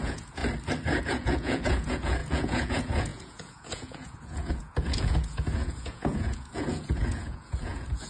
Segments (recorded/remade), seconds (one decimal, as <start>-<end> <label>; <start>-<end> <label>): 0.0-0.4 remade; 0.4-1.0 recorded; 1.0-8.1 remade